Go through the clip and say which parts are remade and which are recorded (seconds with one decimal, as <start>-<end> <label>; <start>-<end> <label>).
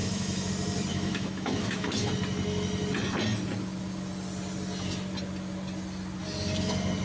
0.0-0.5 remade; 0.5-0.9 recorded; 0.9-2.1 remade; 2.1-7.0 recorded